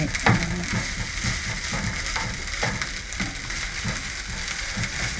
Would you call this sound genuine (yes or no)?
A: yes